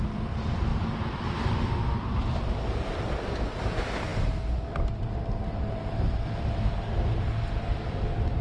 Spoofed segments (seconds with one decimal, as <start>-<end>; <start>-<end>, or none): none